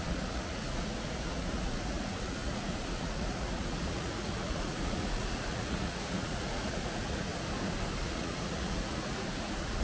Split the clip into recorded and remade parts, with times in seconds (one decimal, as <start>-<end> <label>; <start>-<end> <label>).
0.0-7.3 remade; 7.3-8.0 recorded; 8.0-9.8 remade